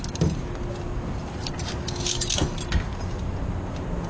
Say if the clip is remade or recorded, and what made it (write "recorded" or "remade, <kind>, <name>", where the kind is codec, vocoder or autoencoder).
recorded